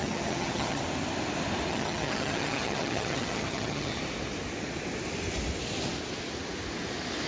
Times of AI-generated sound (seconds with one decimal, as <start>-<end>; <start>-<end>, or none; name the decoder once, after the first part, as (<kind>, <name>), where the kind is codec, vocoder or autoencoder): 0.0-0.8 (vocoder, HiFi-GAN); 1.7-4.0